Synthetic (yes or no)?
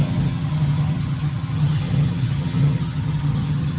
yes